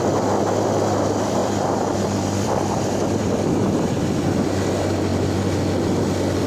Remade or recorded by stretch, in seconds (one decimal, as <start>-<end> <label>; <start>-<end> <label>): 0.0-1.4 recorded; 1.4-4.5 remade; 4.5-6.5 recorded